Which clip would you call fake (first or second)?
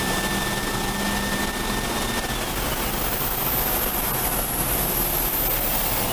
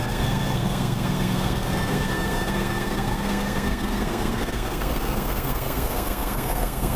second